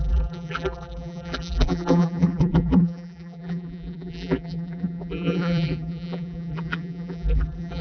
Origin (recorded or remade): remade